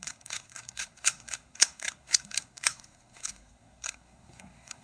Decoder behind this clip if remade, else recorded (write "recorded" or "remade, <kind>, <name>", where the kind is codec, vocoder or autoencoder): remade, codec, SNAC